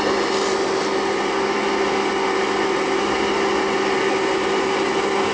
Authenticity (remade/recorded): recorded